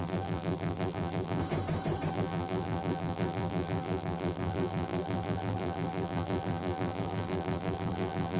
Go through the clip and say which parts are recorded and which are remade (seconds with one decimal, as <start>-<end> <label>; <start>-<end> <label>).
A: 0.0-1.4 remade; 1.4-2.1 recorded; 2.1-8.4 remade